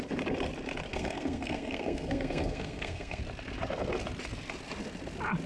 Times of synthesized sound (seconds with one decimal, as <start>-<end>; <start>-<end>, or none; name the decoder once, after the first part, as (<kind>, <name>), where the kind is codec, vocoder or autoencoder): 0.9-3.2 (codec, SNAC)